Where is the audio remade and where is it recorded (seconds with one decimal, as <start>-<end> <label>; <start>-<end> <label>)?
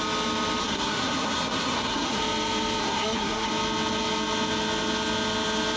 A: 0.0-0.6 recorded; 0.6-2.2 remade; 2.2-2.8 recorded; 2.8-3.5 remade; 3.5-5.8 recorded